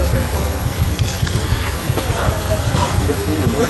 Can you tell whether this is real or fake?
fake